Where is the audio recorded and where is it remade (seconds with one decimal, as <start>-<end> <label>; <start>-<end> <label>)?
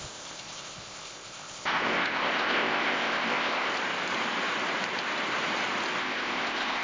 0.0-3.7 remade; 3.7-6.0 recorded; 6.0-6.8 remade